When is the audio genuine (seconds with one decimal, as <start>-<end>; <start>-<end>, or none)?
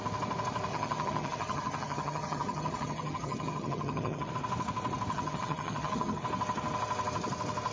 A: 0.0-0.7; 4.3-5.1; 6.2-7.7